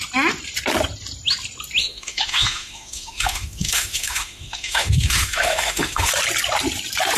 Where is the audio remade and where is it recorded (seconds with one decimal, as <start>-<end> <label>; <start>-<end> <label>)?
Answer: 0.0-1.8 recorded; 1.8-6.1 remade; 6.1-7.2 recorded